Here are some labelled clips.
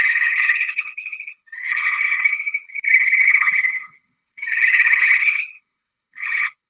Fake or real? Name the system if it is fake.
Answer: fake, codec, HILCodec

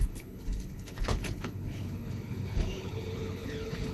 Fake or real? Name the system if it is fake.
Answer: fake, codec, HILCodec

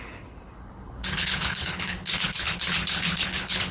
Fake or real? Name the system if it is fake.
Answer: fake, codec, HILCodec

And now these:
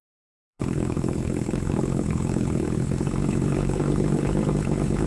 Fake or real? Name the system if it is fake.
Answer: fake, codec, HILCodec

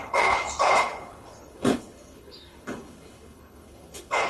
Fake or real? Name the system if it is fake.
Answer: fake, codec, HILCodec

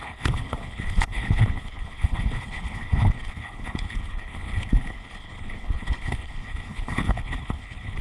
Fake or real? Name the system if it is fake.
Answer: fake, codec, HILCodec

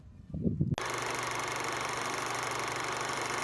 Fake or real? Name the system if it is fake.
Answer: real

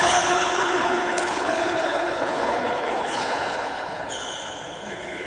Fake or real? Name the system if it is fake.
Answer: fake, codec, HILCodec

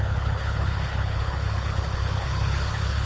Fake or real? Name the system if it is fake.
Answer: fake, codec, HILCodec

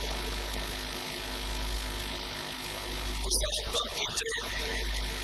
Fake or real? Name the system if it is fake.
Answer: fake, codec, HILCodec